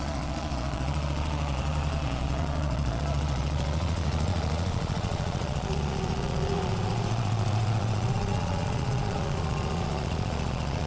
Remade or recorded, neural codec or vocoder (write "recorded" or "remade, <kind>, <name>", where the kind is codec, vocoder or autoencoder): remade, vocoder, Vocos